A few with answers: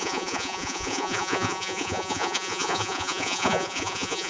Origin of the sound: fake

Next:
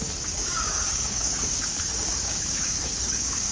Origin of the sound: fake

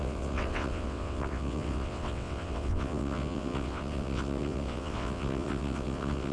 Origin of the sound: fake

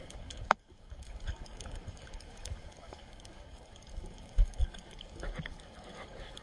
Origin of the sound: fake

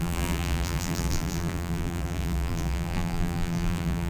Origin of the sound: fake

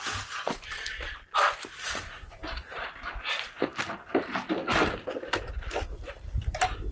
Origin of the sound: real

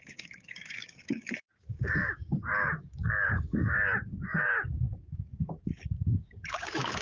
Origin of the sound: fake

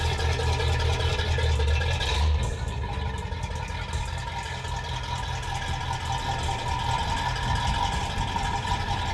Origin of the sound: real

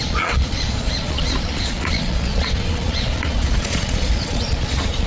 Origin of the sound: fake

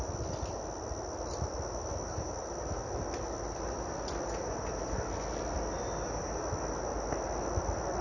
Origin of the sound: real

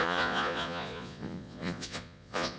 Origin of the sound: fake